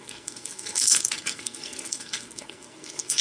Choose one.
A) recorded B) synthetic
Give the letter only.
B